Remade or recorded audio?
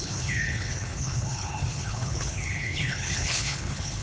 remade